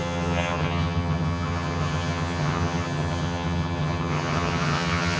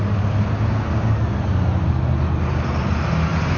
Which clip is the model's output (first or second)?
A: first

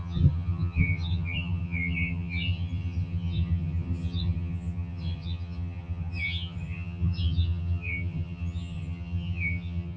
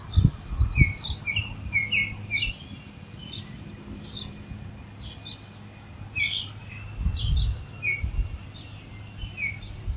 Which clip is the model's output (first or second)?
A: first